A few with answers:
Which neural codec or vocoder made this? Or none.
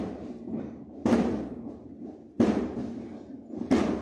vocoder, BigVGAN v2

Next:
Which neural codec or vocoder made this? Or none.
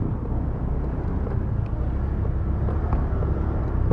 none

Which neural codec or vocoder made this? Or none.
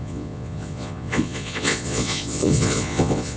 vocoder, Vocos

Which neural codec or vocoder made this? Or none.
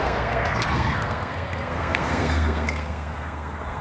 codec, SNAC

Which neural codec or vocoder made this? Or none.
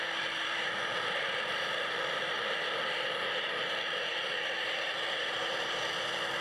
vocoder, BigVGAN v2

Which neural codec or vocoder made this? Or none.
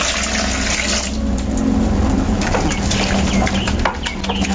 none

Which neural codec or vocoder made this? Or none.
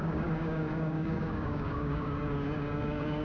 codec, DAC